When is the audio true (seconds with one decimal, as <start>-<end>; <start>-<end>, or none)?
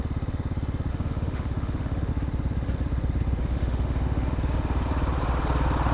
0.0-0.9; 2.1-3.4; 4.3-5.9